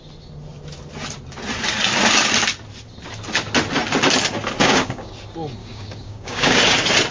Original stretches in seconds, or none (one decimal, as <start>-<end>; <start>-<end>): 0.0-4.6; 5.1-5.6; 6.6-7.1